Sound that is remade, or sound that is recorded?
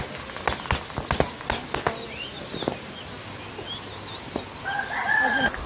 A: recorded